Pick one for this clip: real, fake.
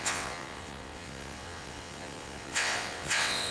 fake